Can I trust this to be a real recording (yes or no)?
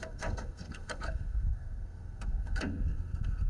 no